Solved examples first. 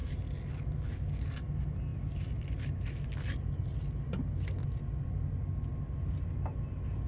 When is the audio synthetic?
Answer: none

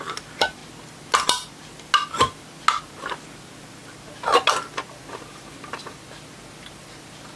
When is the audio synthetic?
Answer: none

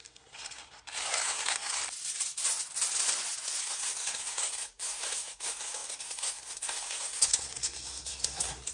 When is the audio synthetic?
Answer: 0.0-1.8; 3.6-8.7

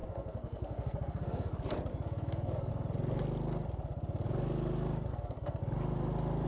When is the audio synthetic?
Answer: 0.0-1.5; 1.9-2.7; 5.1-5.6